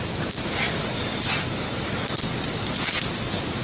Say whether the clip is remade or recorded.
recorded